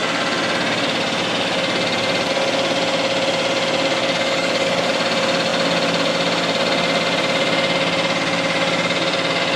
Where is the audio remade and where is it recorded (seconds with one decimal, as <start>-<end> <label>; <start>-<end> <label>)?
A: 0.0-4.0 recorded; 4.0-4.9 remade; 4.9-9.6 recorded